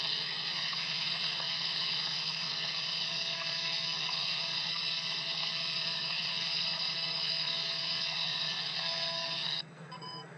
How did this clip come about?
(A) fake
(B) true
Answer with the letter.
A